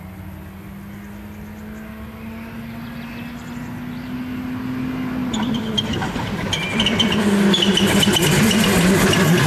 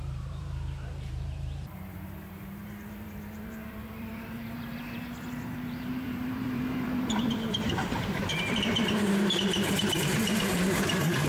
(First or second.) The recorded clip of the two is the first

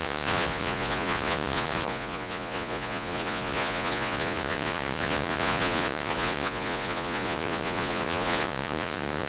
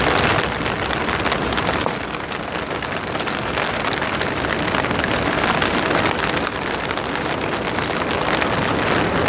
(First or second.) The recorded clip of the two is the second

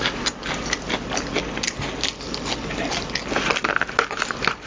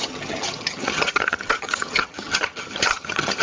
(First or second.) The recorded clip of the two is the first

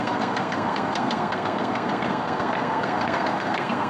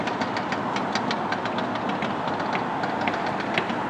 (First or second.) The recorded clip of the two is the second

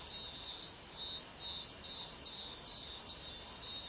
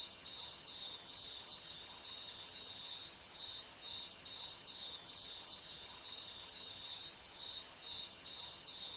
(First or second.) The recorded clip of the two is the first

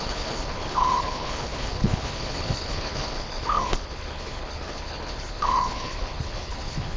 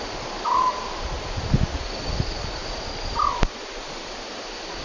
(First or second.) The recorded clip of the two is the second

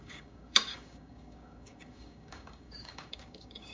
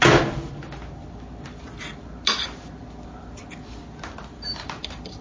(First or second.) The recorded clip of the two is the second